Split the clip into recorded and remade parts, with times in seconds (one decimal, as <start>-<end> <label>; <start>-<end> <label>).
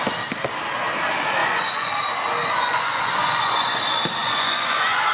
0.0-1.4 recorded; 1.4-1.9 remade; 1.9-2.4 recorded; 2.4-3.8 remade; 3.8-4.2 recorded; 4.2-5.1 remade